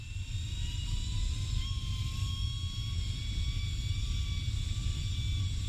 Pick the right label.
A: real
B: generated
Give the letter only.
A